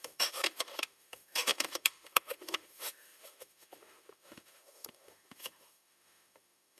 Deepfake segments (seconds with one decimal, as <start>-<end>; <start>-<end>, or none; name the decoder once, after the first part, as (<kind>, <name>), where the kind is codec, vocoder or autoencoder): 0.0-6.8 (autoencoder, DAC-VAE)